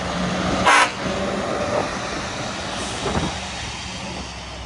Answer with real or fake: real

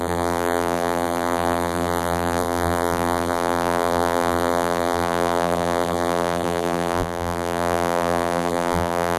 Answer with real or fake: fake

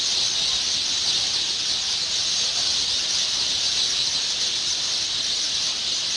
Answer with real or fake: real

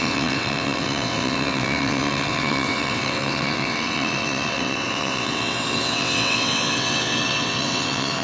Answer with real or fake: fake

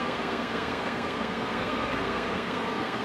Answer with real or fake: fake